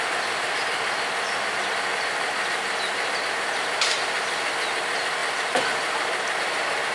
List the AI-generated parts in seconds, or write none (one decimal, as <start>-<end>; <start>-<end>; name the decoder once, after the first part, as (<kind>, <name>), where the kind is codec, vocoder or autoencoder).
0.0-6.9 (vocoder, BigVGAN v2)